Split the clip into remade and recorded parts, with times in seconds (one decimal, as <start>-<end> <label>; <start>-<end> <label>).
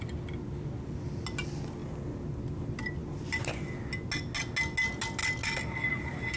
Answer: 0.0-6.4 recorded